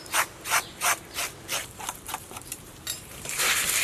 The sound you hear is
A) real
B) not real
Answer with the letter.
B